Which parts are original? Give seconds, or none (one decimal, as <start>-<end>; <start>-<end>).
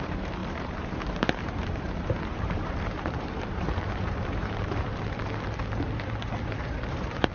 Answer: 4.9-6.4